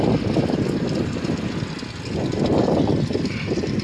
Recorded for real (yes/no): yes